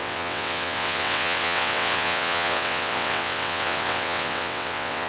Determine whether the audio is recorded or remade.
remade